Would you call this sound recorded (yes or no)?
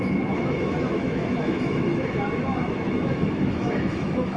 no